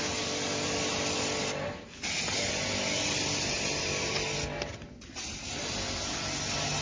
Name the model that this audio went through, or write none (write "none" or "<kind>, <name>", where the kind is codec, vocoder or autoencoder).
none